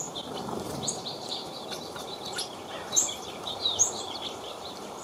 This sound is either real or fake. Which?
fake